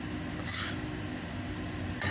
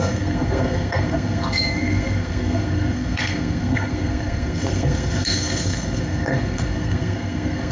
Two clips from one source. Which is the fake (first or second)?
second